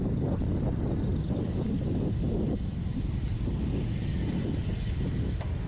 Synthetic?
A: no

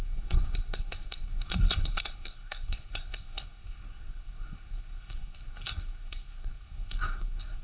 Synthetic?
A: yes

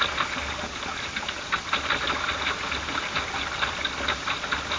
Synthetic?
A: no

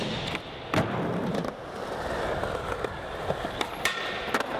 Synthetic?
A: no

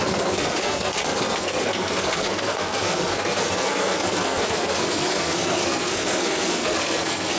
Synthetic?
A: yes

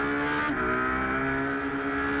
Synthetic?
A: no